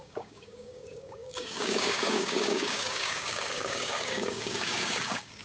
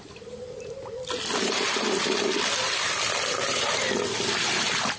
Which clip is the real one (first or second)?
second